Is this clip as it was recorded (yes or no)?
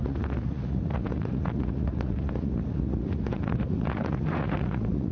no